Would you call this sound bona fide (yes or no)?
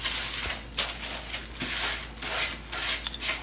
yes